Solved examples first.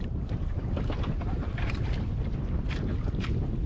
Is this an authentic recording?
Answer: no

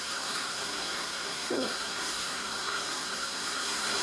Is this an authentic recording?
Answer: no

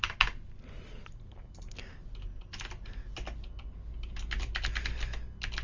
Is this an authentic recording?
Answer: yes